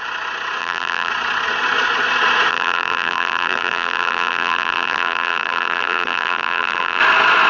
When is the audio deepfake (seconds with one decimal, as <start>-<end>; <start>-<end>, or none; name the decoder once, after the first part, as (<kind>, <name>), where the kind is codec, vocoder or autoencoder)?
0.6-1.1 (vocoder, BigVGAN v2); 2.5-7.0